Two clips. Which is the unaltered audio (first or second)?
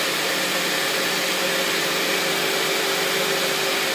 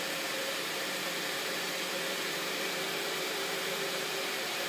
first